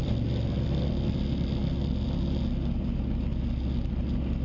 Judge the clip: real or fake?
real